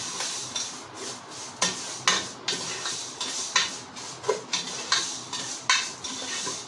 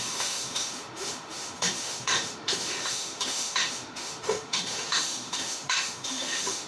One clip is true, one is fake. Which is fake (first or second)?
second